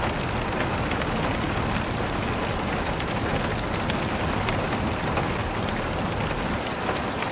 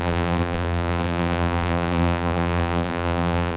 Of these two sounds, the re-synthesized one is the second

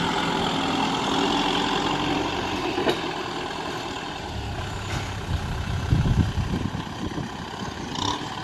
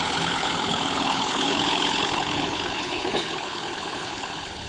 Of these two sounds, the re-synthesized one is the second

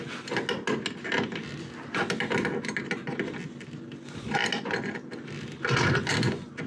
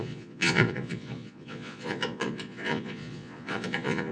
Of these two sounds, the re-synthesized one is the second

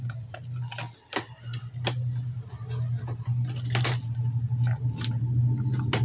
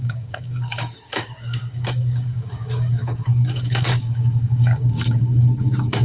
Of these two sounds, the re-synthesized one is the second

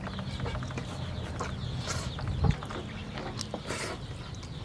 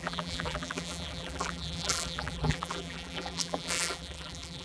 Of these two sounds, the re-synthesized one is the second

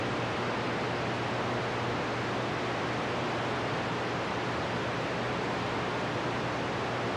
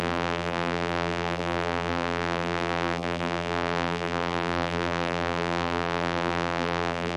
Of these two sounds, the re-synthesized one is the second